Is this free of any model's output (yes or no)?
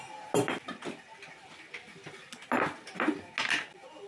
yes